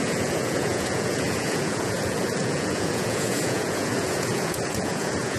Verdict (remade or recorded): remade